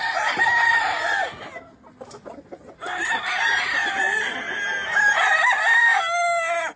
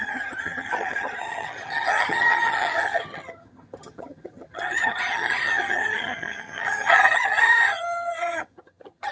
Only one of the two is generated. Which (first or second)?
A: second